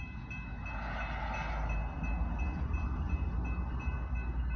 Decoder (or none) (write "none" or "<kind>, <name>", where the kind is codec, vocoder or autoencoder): none